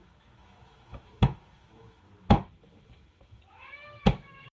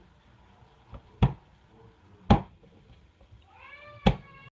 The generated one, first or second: first